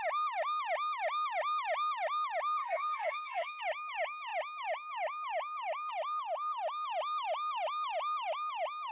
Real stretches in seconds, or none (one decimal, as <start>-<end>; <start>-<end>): 0.0-2.6; 3.6-8.9